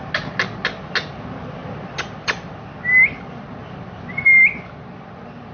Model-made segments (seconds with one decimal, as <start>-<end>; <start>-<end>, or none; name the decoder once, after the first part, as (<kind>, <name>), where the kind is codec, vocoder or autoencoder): none